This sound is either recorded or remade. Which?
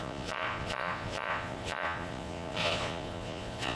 remade